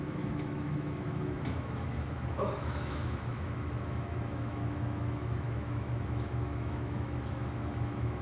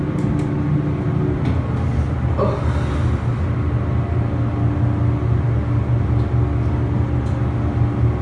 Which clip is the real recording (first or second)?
second